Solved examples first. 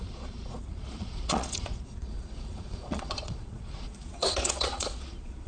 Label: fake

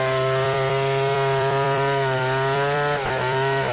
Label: fake